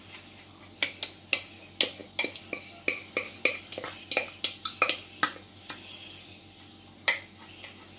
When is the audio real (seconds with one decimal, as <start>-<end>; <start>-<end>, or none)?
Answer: 0.0-8.0